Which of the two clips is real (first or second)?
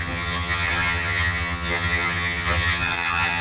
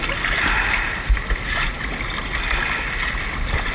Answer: second